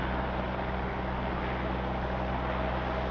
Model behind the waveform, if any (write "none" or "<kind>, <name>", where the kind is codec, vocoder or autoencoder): none